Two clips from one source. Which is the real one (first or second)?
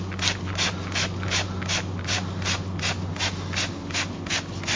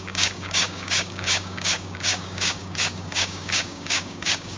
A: first